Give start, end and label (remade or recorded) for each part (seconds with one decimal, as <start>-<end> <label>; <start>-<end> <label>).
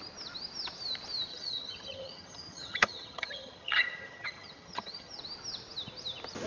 0.0-1.3 recorded; 1.3-5.2 remade; 5.2-6.5 recorded